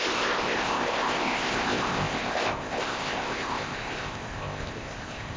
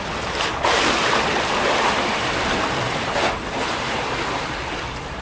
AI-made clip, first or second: first